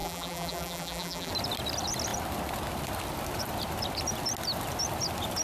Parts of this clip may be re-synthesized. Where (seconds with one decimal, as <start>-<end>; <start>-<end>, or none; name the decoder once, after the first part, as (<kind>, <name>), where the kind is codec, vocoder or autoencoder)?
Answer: 0.0-1.3 (vocoder, BigVGAN v2)